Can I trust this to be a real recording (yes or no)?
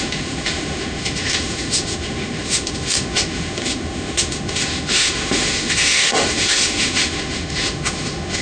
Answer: no